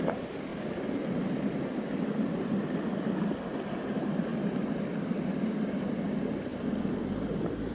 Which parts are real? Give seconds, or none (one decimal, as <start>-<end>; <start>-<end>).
0.0-7.7